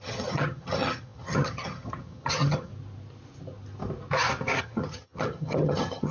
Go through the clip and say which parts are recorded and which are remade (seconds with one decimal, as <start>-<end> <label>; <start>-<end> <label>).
0.0-2.7 remade; 2.7-4.6 recorded; 4.6-6.1 remade